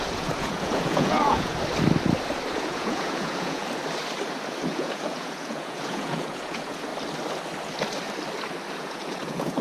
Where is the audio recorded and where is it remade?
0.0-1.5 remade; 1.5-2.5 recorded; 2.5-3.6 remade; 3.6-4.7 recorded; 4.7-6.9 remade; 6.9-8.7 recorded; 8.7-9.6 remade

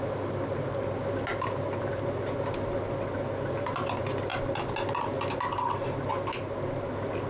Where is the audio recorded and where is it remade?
0.0-7.3 recorded

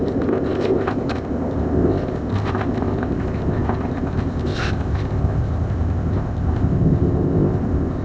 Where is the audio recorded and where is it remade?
0.0-8.0 remade

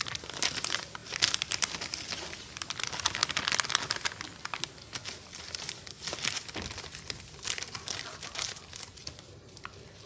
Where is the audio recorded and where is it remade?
0.0-10.1 recorded

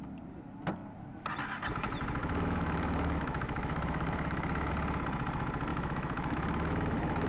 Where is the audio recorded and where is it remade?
0.0-2.2 recorded; 2.2-4.7 remade; 4.7-5.7 recorded; 5.7-7.3 remade